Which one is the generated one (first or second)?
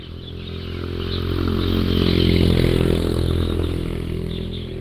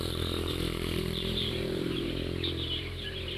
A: second